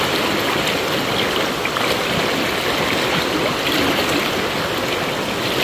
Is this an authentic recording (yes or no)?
yes